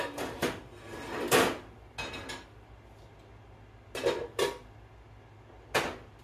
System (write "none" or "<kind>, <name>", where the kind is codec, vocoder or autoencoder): none